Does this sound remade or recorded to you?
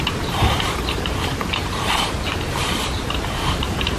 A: remade